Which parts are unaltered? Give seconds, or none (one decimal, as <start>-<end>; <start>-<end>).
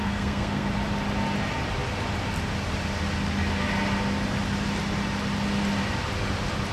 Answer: 0.7-6.7